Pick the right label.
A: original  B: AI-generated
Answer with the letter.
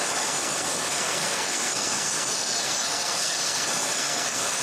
B